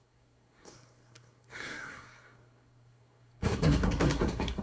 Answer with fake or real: fake